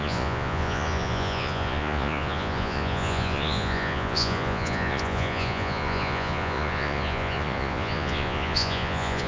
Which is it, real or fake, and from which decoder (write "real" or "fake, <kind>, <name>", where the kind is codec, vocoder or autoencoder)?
fake, vocoder, Vocos